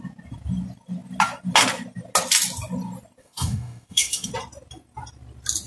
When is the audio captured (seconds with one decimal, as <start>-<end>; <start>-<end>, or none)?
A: 0.0-3.2; 4.3-5.7